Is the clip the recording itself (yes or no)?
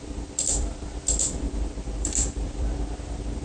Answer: no